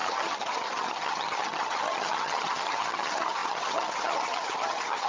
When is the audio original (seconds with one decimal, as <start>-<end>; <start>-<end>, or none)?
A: none